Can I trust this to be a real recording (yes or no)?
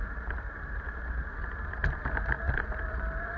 no